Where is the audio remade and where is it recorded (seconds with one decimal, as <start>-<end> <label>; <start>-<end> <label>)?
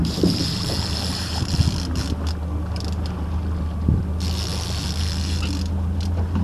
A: 0.0-1.5 remade; 1.5-6.4 recorded